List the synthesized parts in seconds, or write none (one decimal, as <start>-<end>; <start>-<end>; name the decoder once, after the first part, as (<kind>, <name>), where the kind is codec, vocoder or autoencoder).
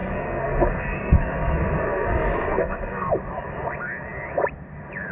0.0-3.1 (codec, SNAC)